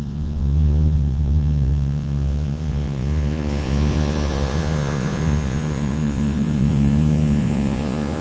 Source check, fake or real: fake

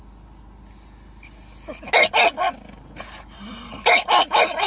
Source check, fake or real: real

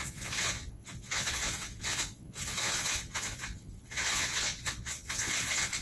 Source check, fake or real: fake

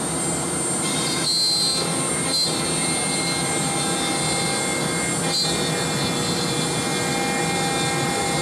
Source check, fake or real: real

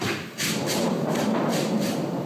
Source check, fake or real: fake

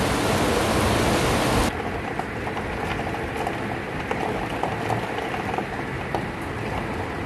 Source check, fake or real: real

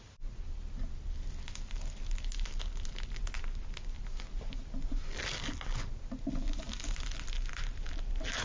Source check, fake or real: real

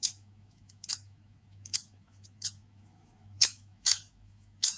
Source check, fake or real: fake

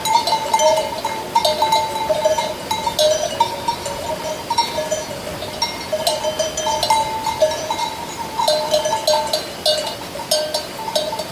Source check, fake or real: real